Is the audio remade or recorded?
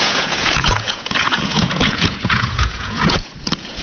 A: remade